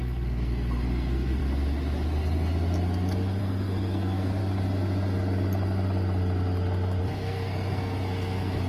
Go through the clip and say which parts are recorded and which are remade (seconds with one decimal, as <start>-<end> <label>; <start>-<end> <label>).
0.0-1.4 remade; 1.4-3.4 recorded; 3.4-4.4 remade; 4.4-7.0 recorded; 7.0-8.7 remade